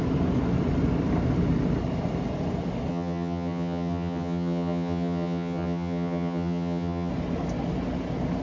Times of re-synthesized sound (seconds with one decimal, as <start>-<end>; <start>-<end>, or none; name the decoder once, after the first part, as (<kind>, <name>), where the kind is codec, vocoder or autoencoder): 2.9-7.1 (vocoder, HiFi-GAN)